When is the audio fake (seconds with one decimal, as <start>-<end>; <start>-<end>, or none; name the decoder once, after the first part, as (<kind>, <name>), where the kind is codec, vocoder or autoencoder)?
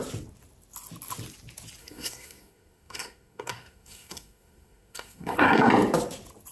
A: 1.8-5.7 (codec, SNAC)